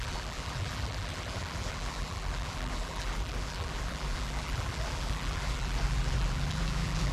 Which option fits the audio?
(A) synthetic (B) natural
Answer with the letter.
A